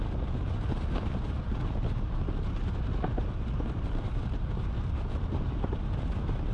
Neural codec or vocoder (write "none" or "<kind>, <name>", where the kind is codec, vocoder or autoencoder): none